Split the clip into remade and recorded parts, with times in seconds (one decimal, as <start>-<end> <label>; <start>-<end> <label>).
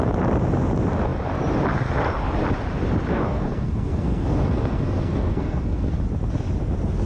0.0-3.1 recorded; 3.1-5.9 remade; 5.9-7.1 recorded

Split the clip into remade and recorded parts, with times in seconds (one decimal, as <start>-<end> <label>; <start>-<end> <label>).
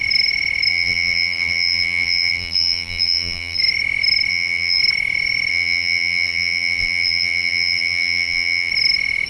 0.0-0.7 recorded; 0.7-3.6 remade; 3.6-4.3 recorded; 4.3-4.8 remade; 4.8-5.5 recorded; 5.5-8.7 remade; 8.7-9.3 recorded